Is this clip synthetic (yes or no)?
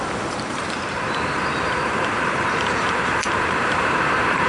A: yes